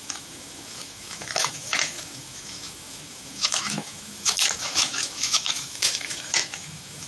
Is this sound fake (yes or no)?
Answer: yes